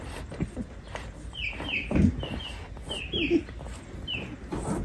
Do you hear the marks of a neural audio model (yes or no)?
no